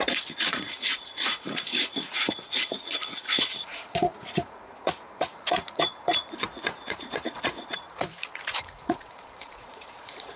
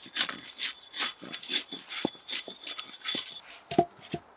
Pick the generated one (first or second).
first